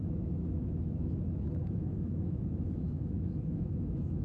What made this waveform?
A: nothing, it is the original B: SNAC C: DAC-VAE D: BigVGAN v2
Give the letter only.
C